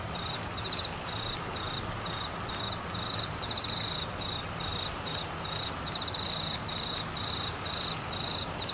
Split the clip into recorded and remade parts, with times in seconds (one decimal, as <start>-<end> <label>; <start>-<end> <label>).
0.0-8.7 recorded